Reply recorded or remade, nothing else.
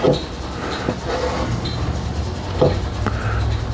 recorded